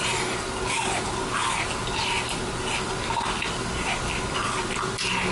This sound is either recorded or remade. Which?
recorded